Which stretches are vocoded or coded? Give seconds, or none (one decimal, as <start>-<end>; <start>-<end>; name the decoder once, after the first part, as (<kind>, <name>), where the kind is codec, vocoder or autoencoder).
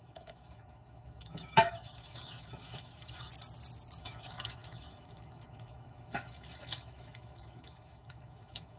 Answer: 0.0-3.3 (autoencoder, DAC-VAE); 4.0-8.8